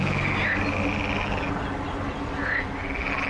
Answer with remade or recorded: recorded